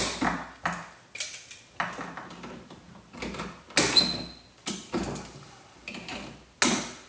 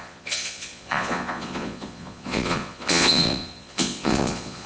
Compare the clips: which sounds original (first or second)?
first